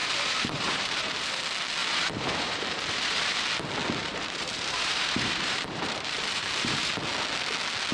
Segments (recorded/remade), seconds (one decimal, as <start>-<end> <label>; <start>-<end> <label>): 0.0-1.4 remade; 1.4-1.8 recorded; 1.8-3.4 remade; 3.4-4.0 recorded; 4.0-6.9 remade; 6.9-7.9 recorded